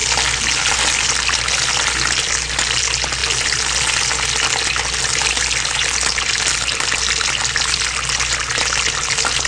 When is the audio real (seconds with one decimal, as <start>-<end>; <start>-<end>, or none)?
0.0-9.5